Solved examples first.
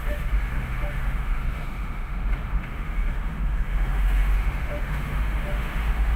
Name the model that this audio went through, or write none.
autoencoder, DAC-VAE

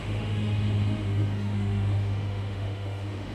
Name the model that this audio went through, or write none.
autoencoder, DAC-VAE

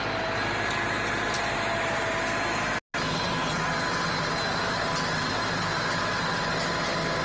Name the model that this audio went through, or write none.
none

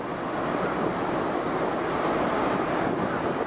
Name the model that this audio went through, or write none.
none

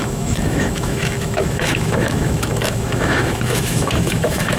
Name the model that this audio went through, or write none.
autoencoder, DAC-VAE